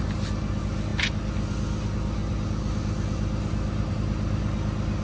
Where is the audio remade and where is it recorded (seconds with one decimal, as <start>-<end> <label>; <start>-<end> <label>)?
0.0-5.0 recorded